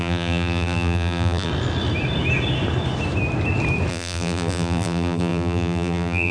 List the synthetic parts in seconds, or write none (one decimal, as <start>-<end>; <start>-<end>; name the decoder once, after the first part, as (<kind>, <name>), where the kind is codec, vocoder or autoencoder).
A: 0.0-1.5 (vocoder, BigVGAN v2); 3.9-6.3